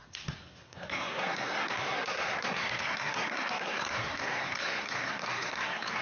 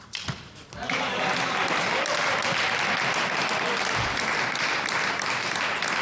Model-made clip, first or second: first